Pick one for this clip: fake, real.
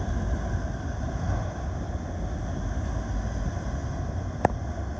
real